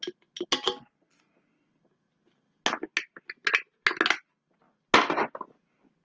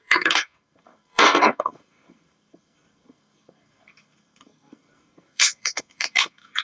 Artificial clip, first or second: second